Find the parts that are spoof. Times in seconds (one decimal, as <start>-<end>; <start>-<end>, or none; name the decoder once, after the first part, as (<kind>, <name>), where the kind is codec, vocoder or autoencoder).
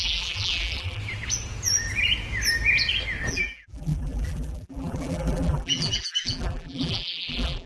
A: 0.0-1.0 (vocoder, BigVGAN v2); 3.3-7.7